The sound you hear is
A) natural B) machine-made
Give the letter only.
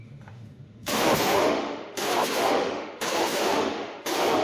B